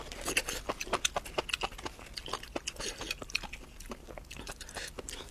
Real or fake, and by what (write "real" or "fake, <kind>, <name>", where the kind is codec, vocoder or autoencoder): real